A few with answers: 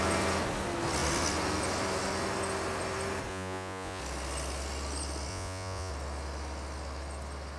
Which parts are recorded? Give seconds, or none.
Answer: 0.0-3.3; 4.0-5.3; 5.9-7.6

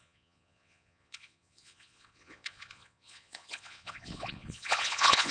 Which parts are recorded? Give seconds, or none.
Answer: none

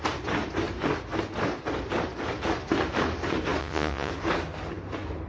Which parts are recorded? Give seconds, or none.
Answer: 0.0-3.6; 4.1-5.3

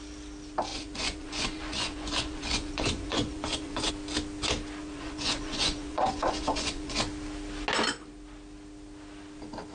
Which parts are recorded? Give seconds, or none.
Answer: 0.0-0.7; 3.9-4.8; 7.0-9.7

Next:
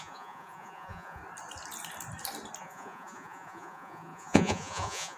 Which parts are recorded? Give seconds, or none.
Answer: 1.2-2.6

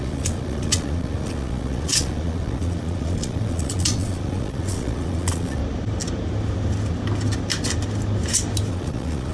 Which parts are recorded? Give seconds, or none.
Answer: 5.6-8.7